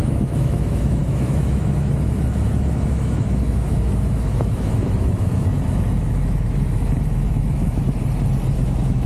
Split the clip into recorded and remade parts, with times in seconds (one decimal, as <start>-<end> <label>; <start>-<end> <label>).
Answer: 0.0-8.0 remade; 8.0-8.5 recorded; 8.5-9.1 remade

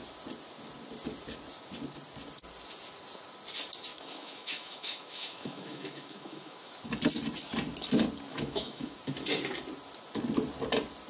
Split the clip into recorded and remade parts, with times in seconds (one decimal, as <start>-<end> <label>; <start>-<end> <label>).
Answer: 0.0-3.9 recorded; 3.9-6.8 remade; 6.8-8.3 recorded; 8.3-9.0 remade; 9.0-11.1 recorded